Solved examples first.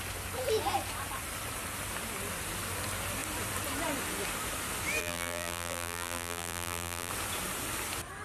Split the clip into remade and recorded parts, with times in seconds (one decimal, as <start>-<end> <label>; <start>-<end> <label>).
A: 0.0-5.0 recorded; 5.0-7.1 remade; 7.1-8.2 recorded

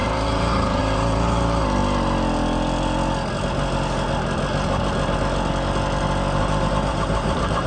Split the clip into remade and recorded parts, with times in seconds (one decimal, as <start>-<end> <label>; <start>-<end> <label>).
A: 0.0-1.8 remade; 1.8-6.4 recorded; 6.4-7.7 remade

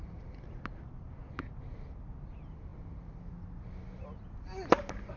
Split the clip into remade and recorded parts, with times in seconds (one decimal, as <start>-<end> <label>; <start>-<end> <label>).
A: 0.0-5.2 recorded

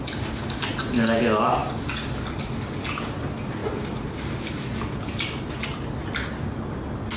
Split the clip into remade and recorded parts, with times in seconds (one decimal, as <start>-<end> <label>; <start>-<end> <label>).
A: 0.0-3.6 recorded; 3.6-4.7 remade; 4.7-7.2 recorded

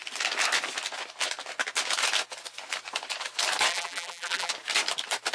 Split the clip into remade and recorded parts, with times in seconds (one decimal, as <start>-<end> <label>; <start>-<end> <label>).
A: 0.0-3.7 recorded; 3.7-4.5 remade; 4.5-5.3 recorded

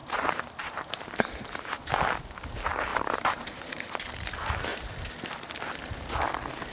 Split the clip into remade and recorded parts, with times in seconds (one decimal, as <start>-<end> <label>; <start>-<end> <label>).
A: 0.0-1.9 remade; 1.9-2.9 recorded; 2.9-3.8 remade; 3.8-6.7 recorded

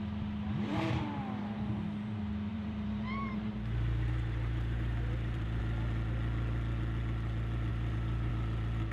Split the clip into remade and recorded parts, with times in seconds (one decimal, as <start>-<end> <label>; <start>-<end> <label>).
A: 0.0-0.7 recorded; 0.7-1.4 remade; 1.4-2.5 recorded; 2.5-5.6 remade; 5.6-7.7 recorded; 7.7-8.3 remade; 8.3-8.9 recorded